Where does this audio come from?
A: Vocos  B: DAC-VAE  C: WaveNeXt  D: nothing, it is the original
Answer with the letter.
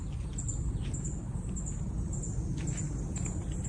D